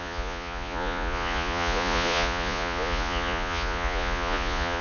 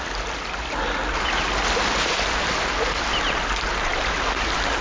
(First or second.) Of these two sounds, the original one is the second